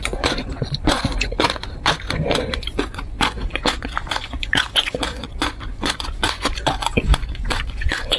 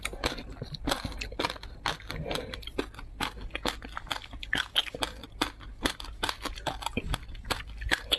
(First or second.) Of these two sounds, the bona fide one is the second